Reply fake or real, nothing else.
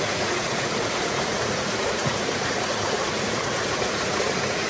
fake